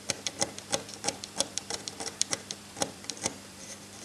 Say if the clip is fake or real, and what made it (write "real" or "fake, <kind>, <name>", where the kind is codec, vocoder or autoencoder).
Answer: fake, vocoder, BigVGAN v2